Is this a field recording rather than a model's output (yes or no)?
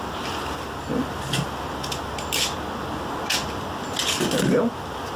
yes